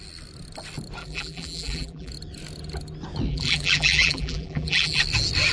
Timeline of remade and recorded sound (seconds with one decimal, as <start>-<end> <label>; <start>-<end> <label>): 0.0-1.0 recorded; 1.0-2.1 remade; 2.1-3.3 recorded; 3.3-5.0 remade; 5.0-5.5 recorded